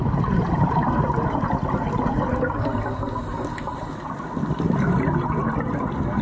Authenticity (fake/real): real